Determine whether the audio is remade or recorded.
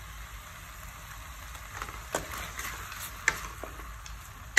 recorded